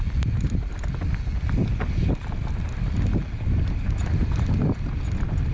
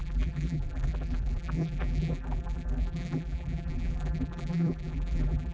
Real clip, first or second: first